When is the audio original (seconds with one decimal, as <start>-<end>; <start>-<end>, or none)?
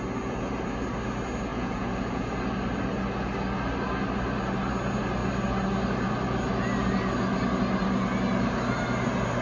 0.0-1.5; 2.3-9.4